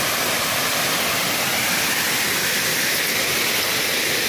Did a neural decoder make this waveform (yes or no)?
no